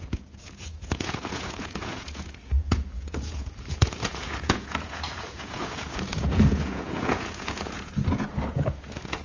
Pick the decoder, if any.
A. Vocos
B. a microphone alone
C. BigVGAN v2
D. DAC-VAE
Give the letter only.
A